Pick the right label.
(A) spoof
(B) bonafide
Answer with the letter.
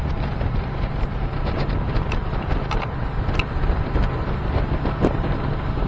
A